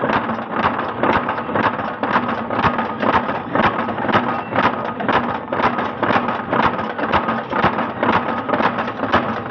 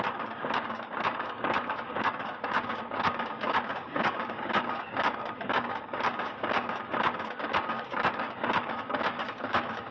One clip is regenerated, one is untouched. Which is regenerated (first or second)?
second